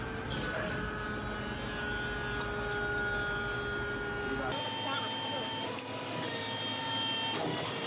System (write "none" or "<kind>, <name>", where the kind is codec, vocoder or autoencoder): none